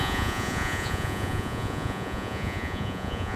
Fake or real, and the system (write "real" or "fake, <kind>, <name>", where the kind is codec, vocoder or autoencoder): fake, vocoder, Vocos